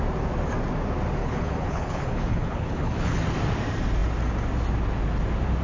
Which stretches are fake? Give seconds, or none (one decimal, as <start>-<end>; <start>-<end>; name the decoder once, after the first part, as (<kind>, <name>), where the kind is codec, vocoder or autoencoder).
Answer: 1.2-3.2 (codec, HILCodec)